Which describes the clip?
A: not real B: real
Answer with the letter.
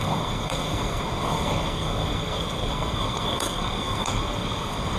A